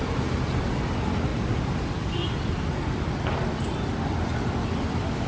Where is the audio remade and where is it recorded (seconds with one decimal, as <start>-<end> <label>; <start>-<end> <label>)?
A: 0.0-5.3 recorded